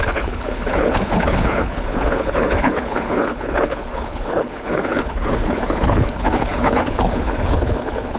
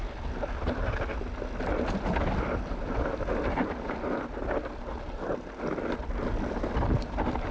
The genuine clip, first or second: second